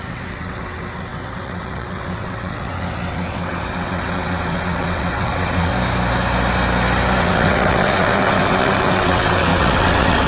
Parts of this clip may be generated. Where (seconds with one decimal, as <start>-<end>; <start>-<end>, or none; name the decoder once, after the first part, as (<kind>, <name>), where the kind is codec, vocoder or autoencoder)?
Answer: 0.0-5.7 (vocoder, WaveNeXt); 7.2-10.3